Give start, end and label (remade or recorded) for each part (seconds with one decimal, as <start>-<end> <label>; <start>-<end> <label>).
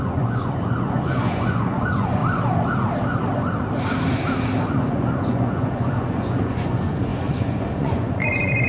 0.0-2.2 remade; 2.2-4.7 recorded; 4.7-8.7 remade